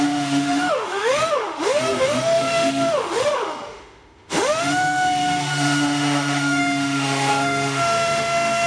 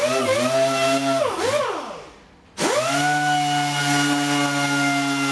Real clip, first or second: second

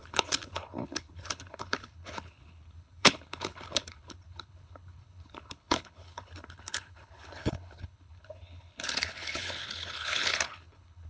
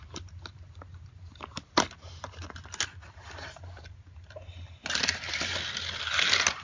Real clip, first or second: second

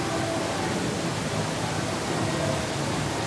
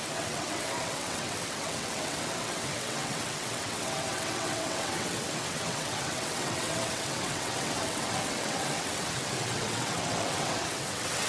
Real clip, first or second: first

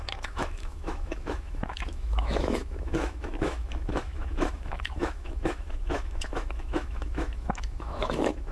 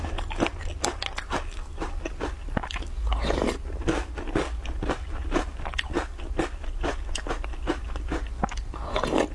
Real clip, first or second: second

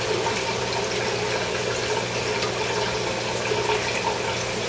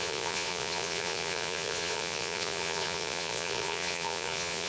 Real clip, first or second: first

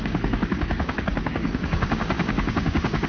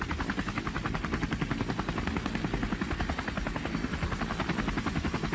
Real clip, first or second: second